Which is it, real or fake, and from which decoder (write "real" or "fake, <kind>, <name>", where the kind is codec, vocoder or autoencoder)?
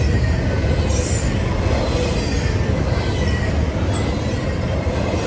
real